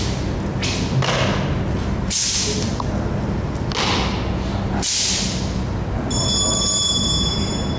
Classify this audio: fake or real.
real